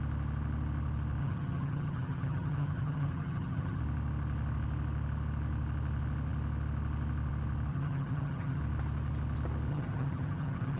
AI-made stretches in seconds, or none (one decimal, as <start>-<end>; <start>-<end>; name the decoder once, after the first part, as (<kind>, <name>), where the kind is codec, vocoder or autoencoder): 1.2-3.8 (vocoder, HiFi-GAN); 7.7-8.6; 9.7-10.8